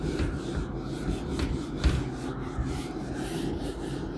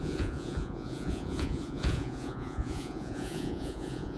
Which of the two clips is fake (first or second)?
second